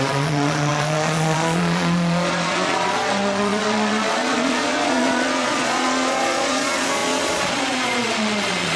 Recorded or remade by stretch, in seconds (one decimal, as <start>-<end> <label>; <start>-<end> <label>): 0.0-8.8 remade